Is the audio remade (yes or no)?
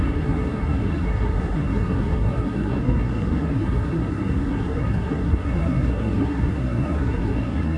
yes